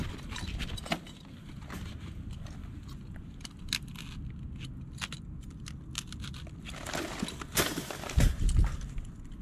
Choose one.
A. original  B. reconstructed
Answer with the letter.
A